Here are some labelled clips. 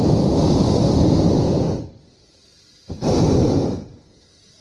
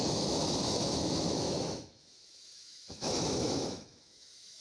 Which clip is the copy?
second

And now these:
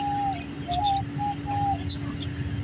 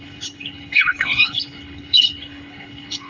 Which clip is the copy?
second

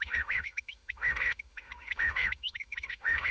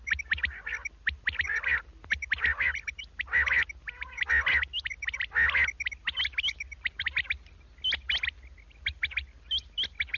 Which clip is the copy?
first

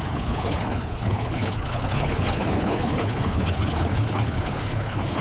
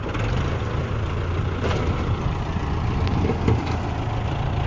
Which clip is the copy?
first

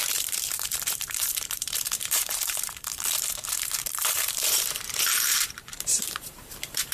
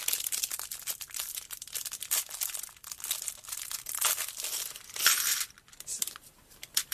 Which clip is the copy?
first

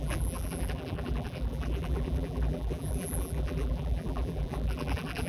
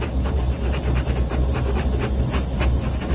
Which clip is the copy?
first